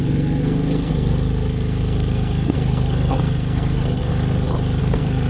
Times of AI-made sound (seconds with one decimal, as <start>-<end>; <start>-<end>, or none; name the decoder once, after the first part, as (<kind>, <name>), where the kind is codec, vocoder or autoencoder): 0.0-4.1 (codec, SNAC); 4.8-5.3

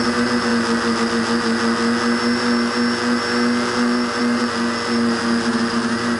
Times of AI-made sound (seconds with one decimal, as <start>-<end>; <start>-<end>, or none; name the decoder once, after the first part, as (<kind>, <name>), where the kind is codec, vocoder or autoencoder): none

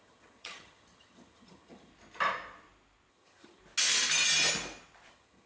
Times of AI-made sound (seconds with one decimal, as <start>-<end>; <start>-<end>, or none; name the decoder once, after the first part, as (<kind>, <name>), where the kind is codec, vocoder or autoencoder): 0.0-1.9 (vocoder, HiFi-GAN); 3.1-3.6; 5.1-5.5

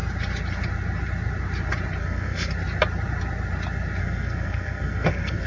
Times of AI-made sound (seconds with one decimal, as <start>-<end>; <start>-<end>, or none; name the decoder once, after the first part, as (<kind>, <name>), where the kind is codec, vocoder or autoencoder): 2.0-2.5 (codec, SNAC); 4.0-5.5